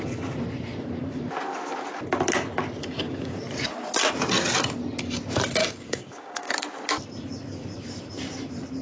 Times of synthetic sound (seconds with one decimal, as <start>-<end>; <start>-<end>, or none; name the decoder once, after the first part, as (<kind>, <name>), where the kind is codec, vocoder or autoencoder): 2.8-3.4 (codec, DAC); 5.6-6.5